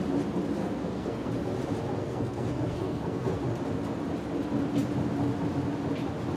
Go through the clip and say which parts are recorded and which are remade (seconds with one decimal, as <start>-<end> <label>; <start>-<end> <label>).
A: 0.0-0.6 recorded; 0.6-1.3 remade; 1.3-2.0 recorded; 2.0-3.4 remade; 3.4-6.4 recorded